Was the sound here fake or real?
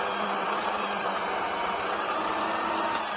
real